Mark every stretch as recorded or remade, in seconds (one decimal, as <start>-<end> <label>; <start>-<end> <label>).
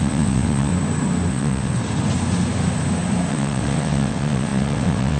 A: 0.0-0.7 remade; 0.7-1.3 recorded; 1.3-1.8 remade; 1.8-3.3 recorded; 3.3-5.2 remade